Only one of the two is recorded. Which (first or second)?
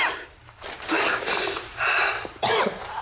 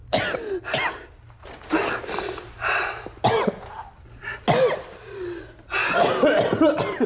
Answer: second